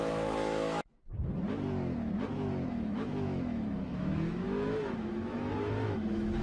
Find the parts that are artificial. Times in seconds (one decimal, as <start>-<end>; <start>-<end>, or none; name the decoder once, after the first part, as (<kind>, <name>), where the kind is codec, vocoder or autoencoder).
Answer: 0.0-1.1 (autoencoder, DAC-VAE); 2.7-6.4